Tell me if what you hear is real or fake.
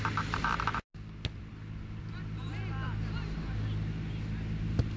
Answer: real